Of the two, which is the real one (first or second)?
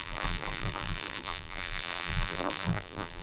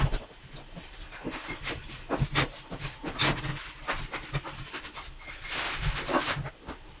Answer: second